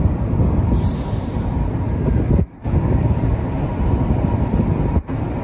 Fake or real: real